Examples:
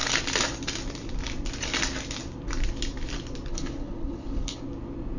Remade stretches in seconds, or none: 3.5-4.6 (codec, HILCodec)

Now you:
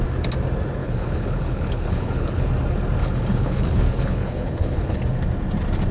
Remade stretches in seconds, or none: 0.8-2.5 (codec, HILCodec); 3.0-5.0

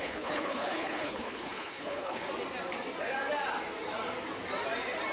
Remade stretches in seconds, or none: 0.0-2.3 (codec, HILCodec)

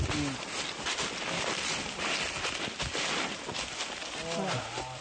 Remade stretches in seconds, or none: none